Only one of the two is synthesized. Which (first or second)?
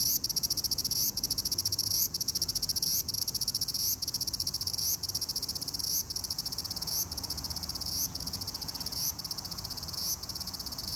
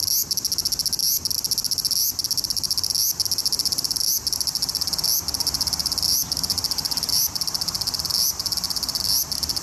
first